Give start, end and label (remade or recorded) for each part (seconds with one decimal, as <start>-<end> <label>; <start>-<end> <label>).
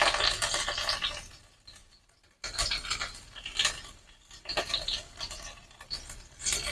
0.0-6.7 recorded